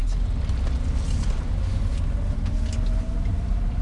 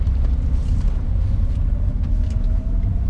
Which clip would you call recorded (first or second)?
first